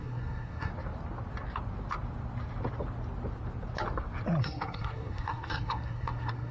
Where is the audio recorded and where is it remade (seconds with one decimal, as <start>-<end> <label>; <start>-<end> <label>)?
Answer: 0.0-0.7 remade; 0.7-4.4 recorded; 4.4-6.5 remade